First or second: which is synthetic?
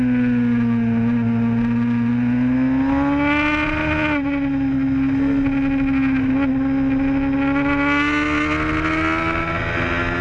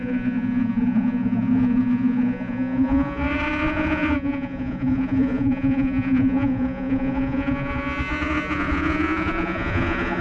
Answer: second